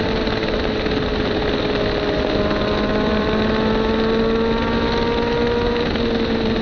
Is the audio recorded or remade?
recorded